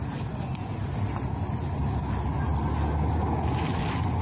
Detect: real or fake real